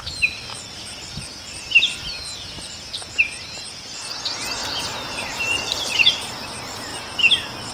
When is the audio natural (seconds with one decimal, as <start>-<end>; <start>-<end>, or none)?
0.0-4.6; 6.3-7.7